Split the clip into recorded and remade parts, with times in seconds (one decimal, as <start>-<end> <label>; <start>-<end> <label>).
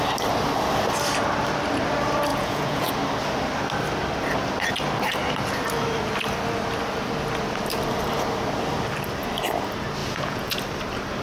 0.0-2.3 recorded; 2.3-2.9 remade; 2.9-10.0 recorded; 10.0-10.6 remade; 10.6-11.2 recorded